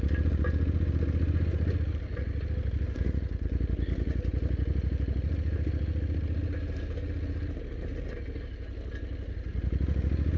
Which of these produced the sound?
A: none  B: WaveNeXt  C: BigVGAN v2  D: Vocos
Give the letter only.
A